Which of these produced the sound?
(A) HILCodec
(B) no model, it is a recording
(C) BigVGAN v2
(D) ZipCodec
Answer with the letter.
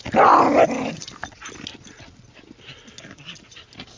B